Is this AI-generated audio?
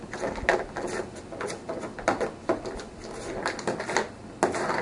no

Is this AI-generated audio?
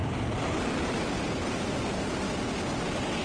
no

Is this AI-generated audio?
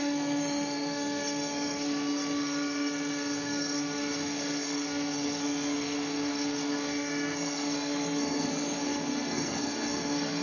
yes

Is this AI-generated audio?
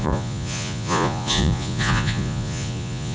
yes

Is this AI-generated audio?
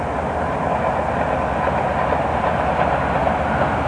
no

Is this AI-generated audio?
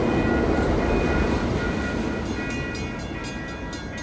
no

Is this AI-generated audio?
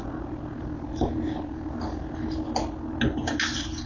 no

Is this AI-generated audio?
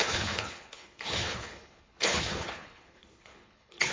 yes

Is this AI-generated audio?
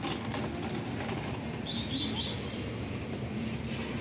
no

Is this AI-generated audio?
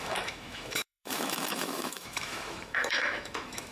yes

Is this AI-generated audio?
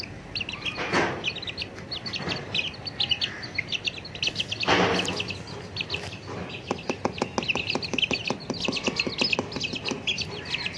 no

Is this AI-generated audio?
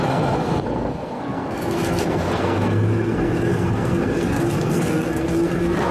yes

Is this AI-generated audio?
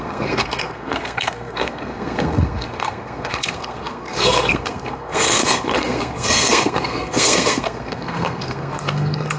yes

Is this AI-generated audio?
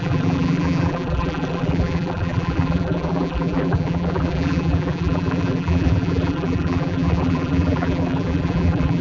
yes